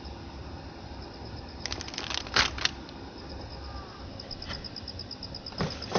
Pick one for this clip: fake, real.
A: real